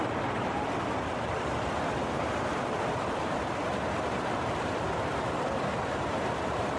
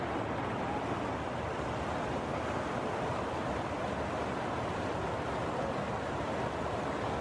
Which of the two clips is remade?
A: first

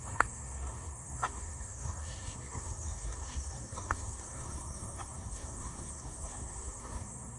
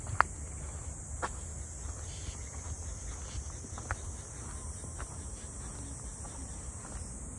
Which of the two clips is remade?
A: first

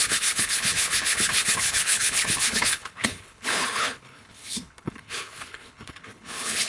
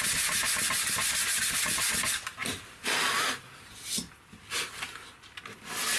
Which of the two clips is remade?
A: first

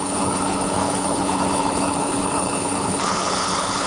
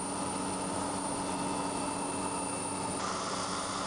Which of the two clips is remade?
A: first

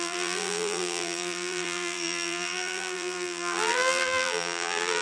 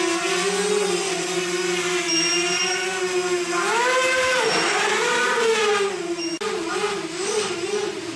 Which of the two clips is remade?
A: first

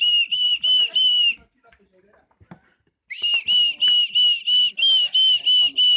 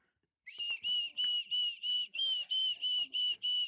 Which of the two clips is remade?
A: second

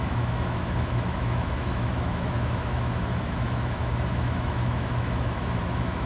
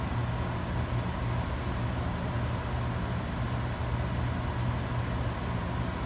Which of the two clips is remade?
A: first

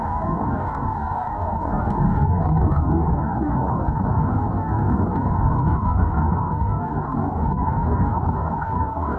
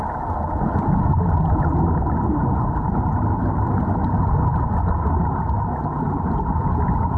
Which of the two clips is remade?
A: first